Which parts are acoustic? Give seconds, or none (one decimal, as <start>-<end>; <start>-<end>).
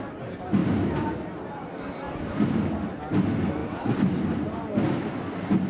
0.0-5.7